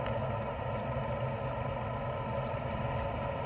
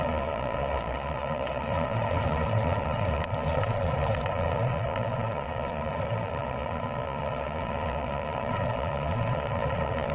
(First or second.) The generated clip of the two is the second